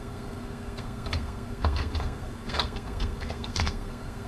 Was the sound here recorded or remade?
remade